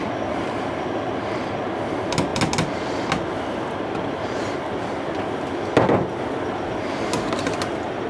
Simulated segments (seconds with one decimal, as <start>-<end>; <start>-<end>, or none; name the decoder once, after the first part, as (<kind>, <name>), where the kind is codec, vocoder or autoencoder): none